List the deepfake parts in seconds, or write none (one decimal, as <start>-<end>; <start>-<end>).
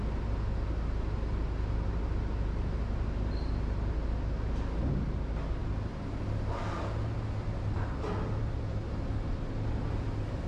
none